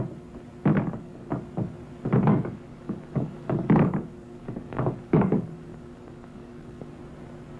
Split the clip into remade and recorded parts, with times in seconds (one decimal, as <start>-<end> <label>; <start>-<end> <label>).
0.0-0.7 recorded; 0.7-1.3 remade; 1.3-2.3 recorded; 2.3-6.9 remade; 6.9-7.6 recorded